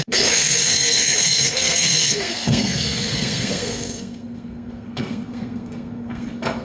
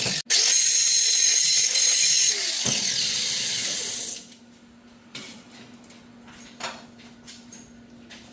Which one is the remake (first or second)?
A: first